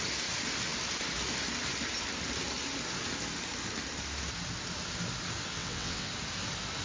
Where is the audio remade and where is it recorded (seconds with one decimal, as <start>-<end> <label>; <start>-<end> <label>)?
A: 0.0-5.5 recorded; 5.5-6.1 remade; 6.1-6.8 recorded